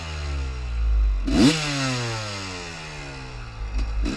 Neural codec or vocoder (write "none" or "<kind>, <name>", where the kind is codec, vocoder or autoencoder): none